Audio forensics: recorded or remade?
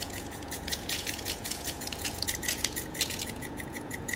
remade